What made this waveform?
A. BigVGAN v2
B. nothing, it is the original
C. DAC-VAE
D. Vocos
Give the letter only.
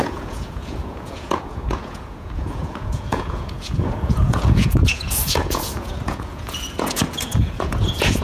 D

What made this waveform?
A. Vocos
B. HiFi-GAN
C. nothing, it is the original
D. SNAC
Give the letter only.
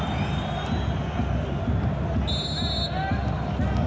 C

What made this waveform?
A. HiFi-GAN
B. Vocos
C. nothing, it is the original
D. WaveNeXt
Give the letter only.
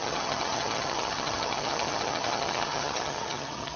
A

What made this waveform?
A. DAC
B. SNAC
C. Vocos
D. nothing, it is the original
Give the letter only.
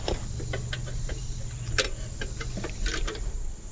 D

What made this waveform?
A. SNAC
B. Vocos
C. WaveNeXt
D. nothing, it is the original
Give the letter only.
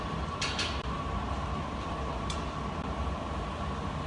D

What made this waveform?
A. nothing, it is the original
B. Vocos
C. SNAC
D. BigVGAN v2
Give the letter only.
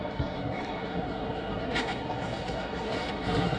C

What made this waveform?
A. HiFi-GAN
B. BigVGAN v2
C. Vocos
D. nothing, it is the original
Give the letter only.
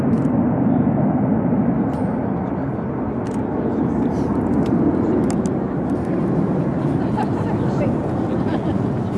D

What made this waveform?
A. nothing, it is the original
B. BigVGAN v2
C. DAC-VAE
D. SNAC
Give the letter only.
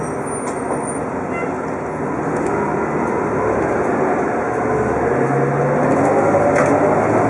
A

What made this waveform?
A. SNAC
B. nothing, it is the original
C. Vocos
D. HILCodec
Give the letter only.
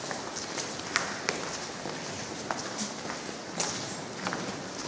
B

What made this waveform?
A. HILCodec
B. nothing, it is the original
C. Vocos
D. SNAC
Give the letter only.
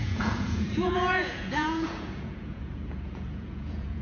C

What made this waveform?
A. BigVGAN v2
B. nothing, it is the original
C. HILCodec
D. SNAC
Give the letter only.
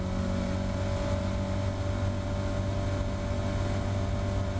B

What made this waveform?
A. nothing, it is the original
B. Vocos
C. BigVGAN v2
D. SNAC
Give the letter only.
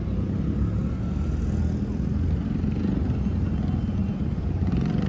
A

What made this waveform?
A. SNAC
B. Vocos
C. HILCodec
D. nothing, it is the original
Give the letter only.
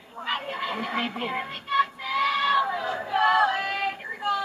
A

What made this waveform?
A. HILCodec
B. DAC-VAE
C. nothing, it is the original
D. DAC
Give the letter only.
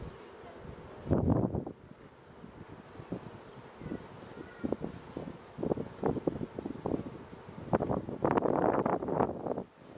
C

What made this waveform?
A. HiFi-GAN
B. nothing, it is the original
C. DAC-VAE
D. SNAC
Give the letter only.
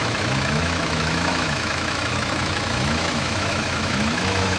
C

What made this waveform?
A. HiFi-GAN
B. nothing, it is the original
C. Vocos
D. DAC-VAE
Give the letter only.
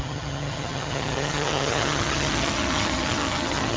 A